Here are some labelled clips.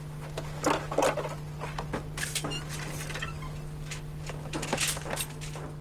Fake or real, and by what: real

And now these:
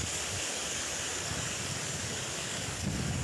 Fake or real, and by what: fake, codec, DAC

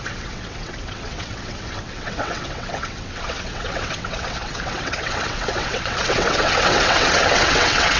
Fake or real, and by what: fake, vocoder, WaveNeXt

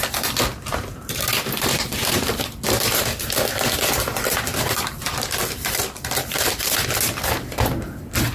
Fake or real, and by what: fake, vocoder, BigVGAN v2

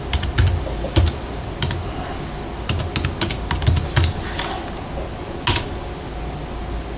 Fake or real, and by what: real